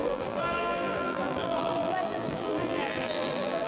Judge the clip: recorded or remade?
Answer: remade